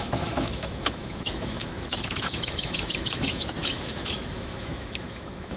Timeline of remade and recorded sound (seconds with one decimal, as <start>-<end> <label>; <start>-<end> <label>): 0.0-5.6 remade